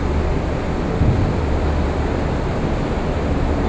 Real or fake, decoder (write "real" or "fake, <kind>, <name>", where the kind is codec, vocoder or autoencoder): real